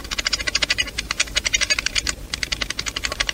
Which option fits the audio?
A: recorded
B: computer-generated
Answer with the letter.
B